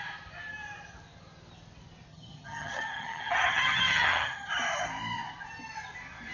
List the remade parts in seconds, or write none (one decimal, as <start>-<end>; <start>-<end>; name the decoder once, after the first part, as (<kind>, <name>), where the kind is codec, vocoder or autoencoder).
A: 2.1-4.5 (vocoder, HiFi-GAN)